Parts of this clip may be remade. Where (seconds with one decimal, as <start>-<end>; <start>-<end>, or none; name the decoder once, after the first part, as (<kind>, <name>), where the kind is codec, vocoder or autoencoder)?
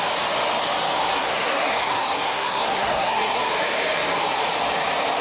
1.2-3.5 (codec, SNAC)